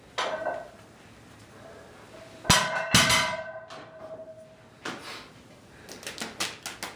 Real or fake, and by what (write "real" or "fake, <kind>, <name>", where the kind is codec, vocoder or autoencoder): real